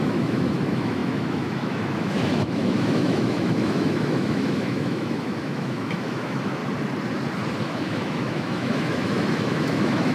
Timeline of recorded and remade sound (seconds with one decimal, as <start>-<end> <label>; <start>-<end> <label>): 0.0-6.6 remade; 6.6-7.6 recorded; 7.6-10.1 remade

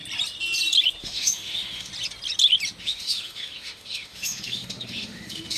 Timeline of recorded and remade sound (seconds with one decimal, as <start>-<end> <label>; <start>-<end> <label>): 0.0-1.0 recorded; 1.0-1.9 remade; 1.9-2.8 recorded; 2.8-5.6 remade

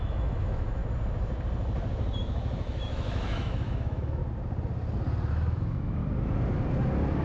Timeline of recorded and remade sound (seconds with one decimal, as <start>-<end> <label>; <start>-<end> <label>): 0.0-0.8 remade; 0.8-2.2 recorded; 2.2-4.2 remade; 4.2-5.3 recorded; 5.3-6.0 remade; 6.0-7.2 recorded

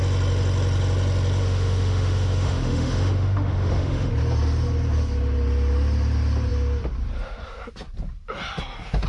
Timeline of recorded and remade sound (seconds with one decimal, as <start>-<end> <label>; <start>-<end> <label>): 0.0-1.4 recorded; 1.4-4.1 remade; 4.1-9.1 recorded

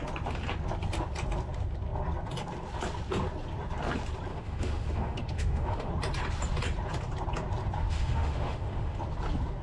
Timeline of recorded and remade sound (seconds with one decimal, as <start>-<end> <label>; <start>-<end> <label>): 0.0-4.3 recorded; 4.3-5.9 remade; 5.9-7.8 recorded; 7.8-9.0 remade; 9.0-9.6 recorded

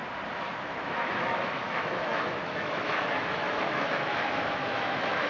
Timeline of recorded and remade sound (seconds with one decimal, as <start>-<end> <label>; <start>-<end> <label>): 0.0-0.6 recorded; 0.6-5.3 remade

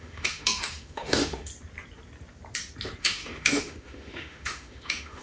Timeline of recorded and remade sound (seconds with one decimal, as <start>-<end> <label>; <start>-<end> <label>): 0.0-1.5 remade; 1.5-3.0 recorded; 3.0-5.2 remade

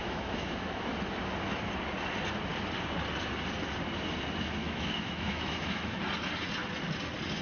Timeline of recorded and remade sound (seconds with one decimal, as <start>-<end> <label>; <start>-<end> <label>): 0.0-0.9 remade; 0.9-4.6 recorded; 4.6-6.0 remade; 6.0-7.4 recorded